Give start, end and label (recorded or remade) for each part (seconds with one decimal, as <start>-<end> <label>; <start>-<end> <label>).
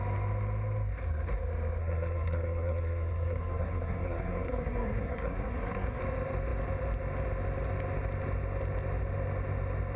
0.0-1.8 recorded; 1.8-6.0 remade; 6.0-10.0 recorded